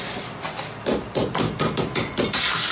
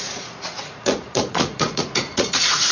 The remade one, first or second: second